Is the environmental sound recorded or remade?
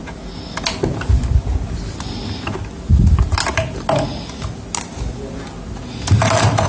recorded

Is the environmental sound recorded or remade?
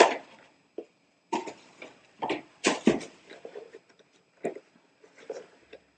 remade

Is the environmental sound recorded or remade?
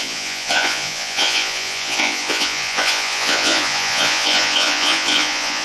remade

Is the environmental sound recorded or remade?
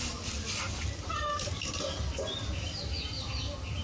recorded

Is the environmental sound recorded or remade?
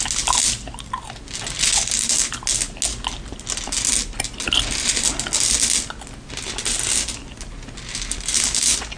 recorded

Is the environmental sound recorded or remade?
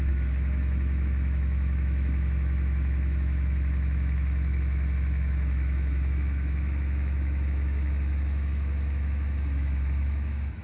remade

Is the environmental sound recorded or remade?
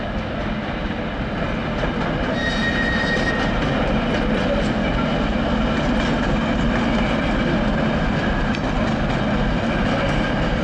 recorded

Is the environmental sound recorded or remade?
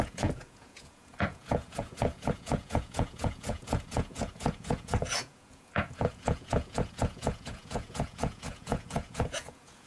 remade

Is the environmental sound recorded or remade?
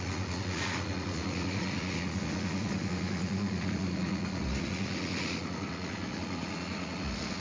remade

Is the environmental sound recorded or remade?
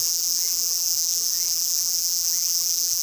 remade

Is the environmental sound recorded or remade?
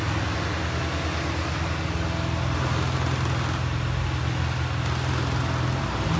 recorded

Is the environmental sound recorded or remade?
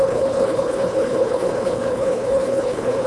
remade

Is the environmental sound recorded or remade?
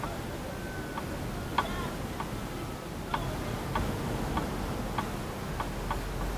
recorded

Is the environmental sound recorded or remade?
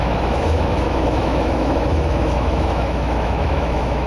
remade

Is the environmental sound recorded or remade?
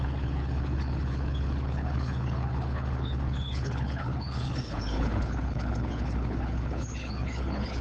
remade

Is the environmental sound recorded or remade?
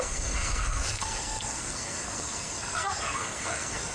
remade